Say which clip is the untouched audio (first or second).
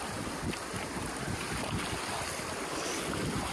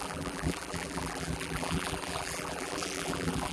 first